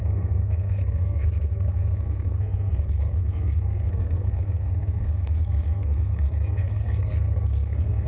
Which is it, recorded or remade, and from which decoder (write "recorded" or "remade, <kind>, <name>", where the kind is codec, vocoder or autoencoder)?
remade, codec, SNAC